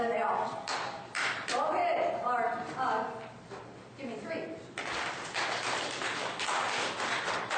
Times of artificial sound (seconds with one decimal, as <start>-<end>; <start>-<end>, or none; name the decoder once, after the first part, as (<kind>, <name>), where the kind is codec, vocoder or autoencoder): 0.0-1.8 (vocoder, BigVGAN v2); 3.8-7.6